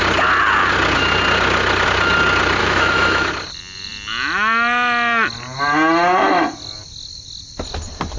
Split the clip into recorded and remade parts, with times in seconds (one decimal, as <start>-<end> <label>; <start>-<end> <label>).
0.0-2.6 recorded; 2.6-3.3 remade; 3.3-8.2 recorded